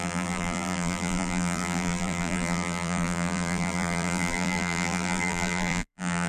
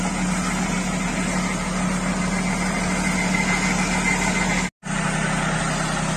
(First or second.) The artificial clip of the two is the first